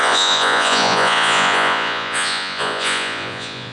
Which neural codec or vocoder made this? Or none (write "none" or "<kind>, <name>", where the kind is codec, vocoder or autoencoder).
vocoder, Vocos